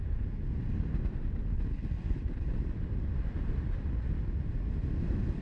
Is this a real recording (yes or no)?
yes